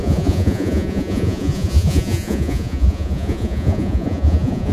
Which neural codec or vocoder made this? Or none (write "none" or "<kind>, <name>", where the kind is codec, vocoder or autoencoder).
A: vocoder, Vocos